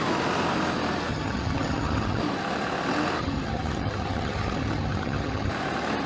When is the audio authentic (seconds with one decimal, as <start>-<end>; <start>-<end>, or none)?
0.0-1.1; 2.2-3.2; 5.5-6.1